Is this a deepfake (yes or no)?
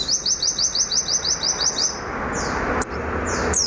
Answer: no